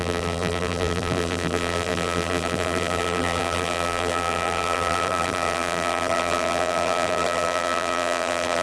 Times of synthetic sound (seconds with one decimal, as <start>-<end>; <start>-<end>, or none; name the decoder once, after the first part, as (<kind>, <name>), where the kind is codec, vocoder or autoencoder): 0.0-8.6 (vocoder, BigVGAN v2)